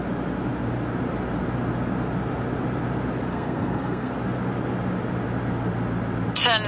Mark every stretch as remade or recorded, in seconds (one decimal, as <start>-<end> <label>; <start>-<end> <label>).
0.0-3.3 recorded; 3.3-4.1 remade; 4.1-6.7 recorded